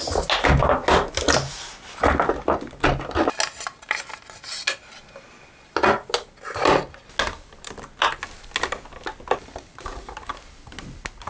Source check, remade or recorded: recorded